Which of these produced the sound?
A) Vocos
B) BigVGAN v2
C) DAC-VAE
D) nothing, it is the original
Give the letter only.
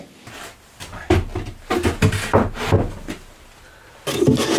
D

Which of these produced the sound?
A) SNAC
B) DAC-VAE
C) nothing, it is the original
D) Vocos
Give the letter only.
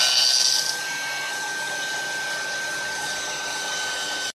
C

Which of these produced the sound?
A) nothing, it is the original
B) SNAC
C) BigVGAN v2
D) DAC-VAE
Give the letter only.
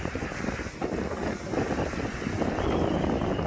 A